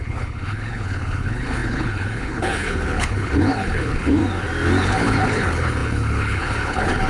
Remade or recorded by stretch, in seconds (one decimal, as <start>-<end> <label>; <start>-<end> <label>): 0.0-4.2 remade; 4.2-4.8 recorded; 4.8-7.1 remade